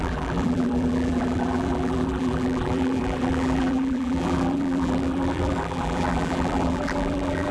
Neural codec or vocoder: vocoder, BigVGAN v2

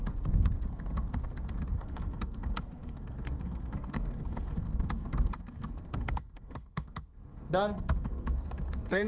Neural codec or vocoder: codec, SNAC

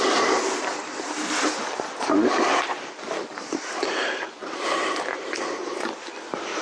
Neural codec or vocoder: none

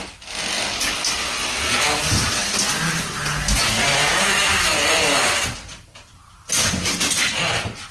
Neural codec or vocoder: none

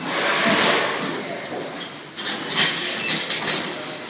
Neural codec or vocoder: none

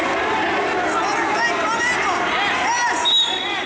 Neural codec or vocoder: none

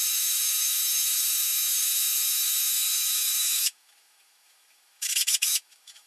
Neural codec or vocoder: autoencoder, DAC-VAE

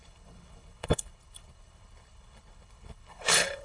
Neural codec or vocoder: codec, HILCodec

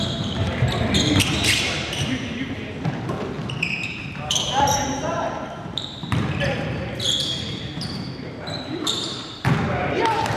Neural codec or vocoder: vocoder, BigVGAN v2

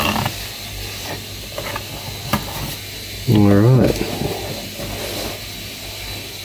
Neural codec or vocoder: none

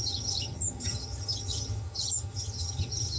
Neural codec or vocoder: vocoder, HiFi-GAN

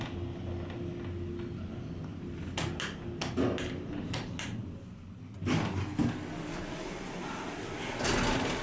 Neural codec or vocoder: none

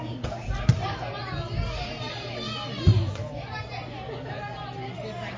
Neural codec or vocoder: none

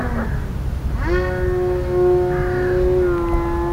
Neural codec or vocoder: none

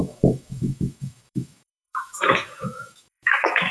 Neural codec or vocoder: autoencoder, DAC-VAE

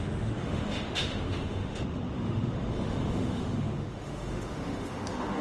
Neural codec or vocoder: autoencoder, DAC-VAE